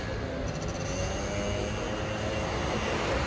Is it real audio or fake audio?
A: real